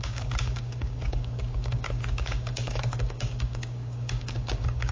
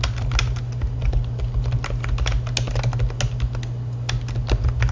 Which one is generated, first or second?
first